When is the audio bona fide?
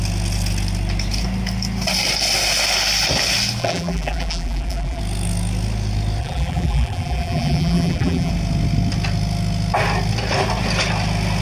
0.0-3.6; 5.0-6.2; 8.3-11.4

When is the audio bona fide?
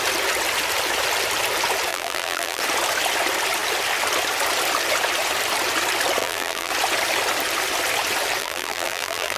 0.0-1.9; 2.6-6.2; 6.7-8.4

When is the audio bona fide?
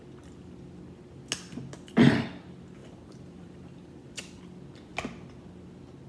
0.0-2.8; 4.4-6.1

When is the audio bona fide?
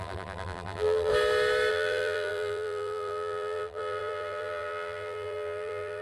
1.1-1.7